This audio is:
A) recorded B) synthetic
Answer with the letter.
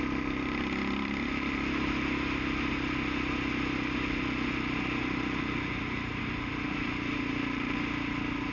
A